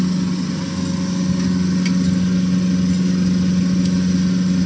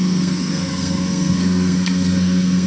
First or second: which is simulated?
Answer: second